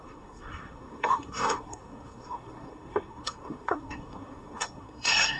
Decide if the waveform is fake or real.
fake